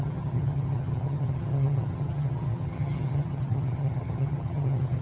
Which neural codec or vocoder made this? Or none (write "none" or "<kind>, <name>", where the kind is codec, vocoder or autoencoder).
vocoder, HiFi-GAN